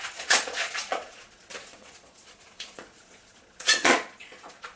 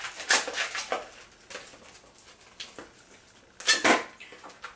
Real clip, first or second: second